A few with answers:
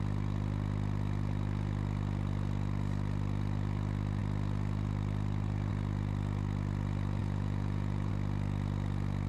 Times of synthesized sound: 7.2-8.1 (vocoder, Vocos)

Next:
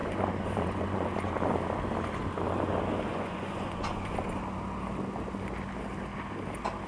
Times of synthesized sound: 0.0-1.3 (vocoder, Vocos); 3.1-4.4

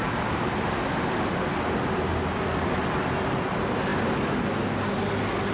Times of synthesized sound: none

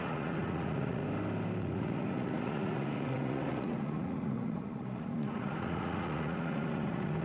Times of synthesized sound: 0.0-1.0 (vocoder, Vocos); 1.6-7.2